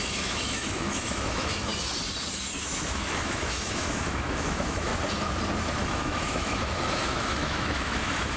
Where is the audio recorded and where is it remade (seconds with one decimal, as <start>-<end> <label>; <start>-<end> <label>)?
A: 0.0-1.7 remade; 1.7-2.6 recorded; 2.6-4.9 remade; 4.9-5.7 recorded; 5.7-8.4 remade